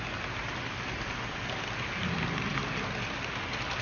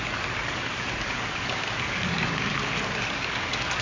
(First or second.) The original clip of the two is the first